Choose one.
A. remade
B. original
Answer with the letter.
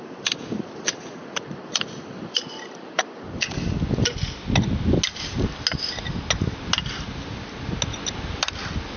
B